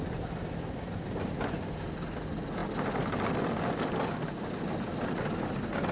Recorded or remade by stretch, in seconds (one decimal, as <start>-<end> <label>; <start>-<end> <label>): 0.0-5.9 recorded